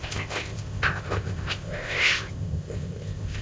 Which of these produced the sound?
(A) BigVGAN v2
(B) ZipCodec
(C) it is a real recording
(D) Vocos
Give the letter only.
B